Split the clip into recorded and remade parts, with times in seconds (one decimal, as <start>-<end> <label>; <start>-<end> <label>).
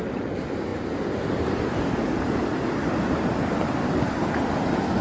0.0-5.0 recorded